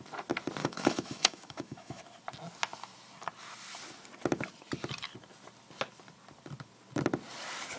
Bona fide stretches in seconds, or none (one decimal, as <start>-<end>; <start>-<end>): 0.0-0.6; 2.0-7.8